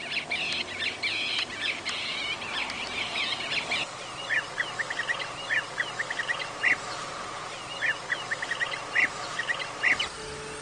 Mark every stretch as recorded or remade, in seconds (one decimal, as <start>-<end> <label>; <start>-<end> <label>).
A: 0.0-10.6 recorded

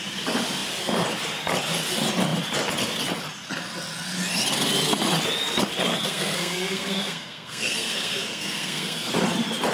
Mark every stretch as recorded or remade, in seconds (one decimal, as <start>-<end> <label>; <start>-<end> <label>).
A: 0.0-5.9 recorded; 5.9-9.1 remade; 9.1-9.7 recorded

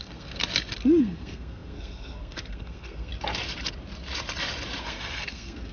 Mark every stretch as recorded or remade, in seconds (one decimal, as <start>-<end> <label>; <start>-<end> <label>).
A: 0.0-0.4 remade; 0.4-1.0 recorded; 1.0-3.1 remade; 3.1-4.8 recorded; 4.8-5.7 remade

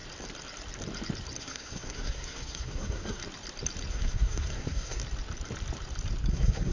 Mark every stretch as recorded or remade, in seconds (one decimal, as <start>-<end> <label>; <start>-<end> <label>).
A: 0.0-1.4 recorded; 1.4-3.2 remade; 3.2-3.9 recorded; 3.9-5.0 remade; 5.0-6.3 recorded; 6.3-6.7 remade

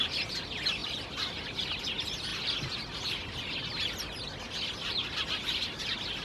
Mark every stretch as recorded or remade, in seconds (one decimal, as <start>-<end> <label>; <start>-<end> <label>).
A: 0.0-6.2 recorded